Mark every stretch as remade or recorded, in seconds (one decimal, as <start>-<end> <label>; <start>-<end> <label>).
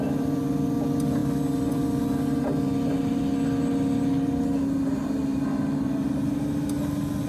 0.0-7.3 recorded